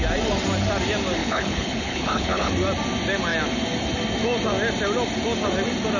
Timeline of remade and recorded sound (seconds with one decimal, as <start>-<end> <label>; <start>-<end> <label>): 0.0-1.2 recorded; 1.2-2.5 remade; 2.5-6.0 recorded